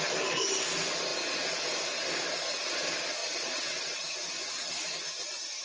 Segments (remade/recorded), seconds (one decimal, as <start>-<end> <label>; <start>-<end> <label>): 0.0-3.2 recorded; 3.2-3.9 remade; 3.9-5.6 recorded